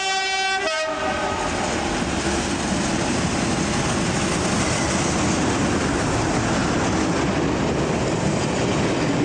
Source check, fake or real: real